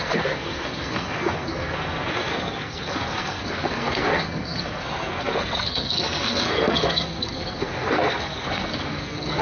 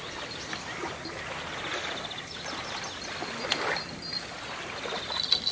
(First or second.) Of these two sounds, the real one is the second